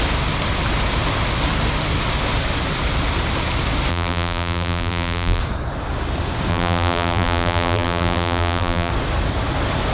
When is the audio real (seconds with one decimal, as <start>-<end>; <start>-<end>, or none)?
0.0-3.9; 5.4-6.5; 8.9-9.9